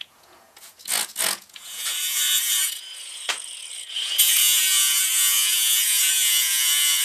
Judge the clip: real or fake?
fake